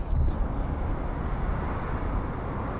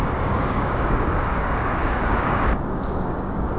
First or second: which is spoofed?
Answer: second